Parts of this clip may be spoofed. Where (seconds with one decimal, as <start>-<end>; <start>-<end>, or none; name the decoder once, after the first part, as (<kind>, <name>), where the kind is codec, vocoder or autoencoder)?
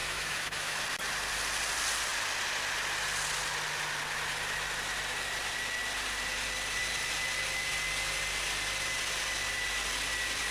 0.0-0.8 (autoencoder, DAC-VAE)